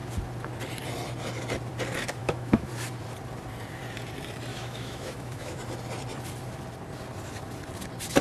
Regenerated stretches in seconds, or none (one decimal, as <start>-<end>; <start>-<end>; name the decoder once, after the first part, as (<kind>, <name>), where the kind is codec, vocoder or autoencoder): 2.2-2.7 (autoencoder, DAC-VAE); 4.5-5.6